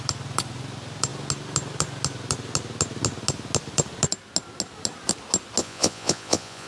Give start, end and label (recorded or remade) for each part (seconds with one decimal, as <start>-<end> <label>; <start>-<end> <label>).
0.0-5.6 recorded; 5.6-6.7 remade